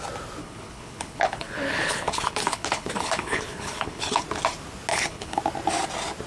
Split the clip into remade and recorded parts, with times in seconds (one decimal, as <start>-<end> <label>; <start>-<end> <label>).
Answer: 0.0-0.4 recorded; 0.4-4.2 remade; 4.2-4.9 recorded; 4.9-5.4 remade; 5.4-6.3 recorded